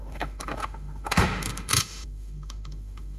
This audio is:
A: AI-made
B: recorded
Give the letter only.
A